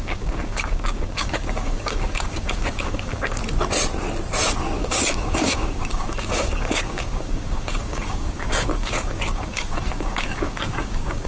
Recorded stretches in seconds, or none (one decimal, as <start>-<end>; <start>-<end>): 3.4-4.8